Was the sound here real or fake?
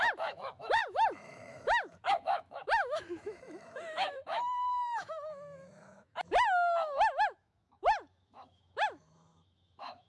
fake